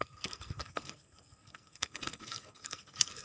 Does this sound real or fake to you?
fake